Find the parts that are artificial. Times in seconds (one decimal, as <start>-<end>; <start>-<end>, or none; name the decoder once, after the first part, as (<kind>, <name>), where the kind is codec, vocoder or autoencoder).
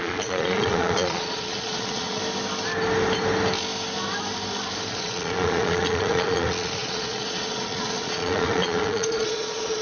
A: 0.0-2.2 (vocoder, Vocos); 4.9-9.8